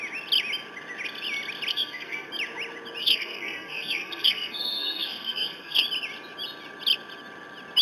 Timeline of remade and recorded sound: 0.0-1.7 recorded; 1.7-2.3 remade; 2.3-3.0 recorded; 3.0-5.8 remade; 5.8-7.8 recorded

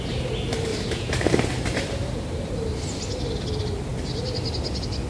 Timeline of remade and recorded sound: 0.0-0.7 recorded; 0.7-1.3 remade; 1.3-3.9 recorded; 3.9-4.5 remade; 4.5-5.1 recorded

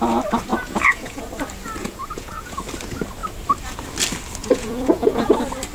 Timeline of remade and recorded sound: 0.0-0.5 recorded; 0.5-1.2 remade; 1.2-1.8 recorded; 1.8-2.6 remade; 2.6-4.4 recorded; 4.4-5.3 remade; 5.3-5.7 recorded

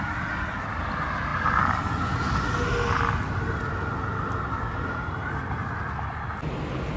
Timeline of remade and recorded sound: 0.0-7.0 recorded

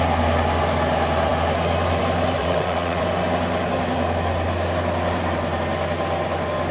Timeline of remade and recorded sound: 0.0-2.4 recorded; 2.4-3.0 remade; 3.0-6.7 recorded